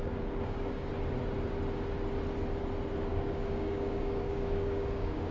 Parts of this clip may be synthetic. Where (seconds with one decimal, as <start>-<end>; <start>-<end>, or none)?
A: 0.0-0.9; 3.1-5.3